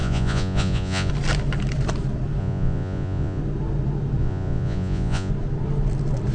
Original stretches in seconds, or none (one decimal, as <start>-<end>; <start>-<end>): 1.1-2.4; 3.4-4.2; 5.3-6.3